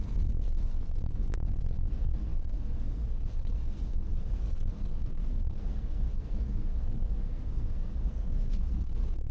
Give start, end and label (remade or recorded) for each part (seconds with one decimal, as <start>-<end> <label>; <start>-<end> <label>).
0.0-9.3 remade